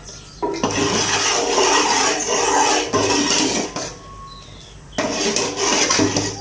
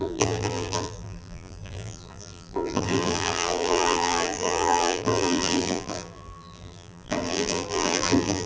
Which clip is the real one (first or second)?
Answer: first